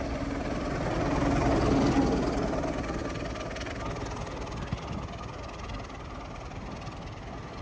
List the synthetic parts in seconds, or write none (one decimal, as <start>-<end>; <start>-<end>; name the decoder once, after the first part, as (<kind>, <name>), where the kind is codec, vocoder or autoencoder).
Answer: none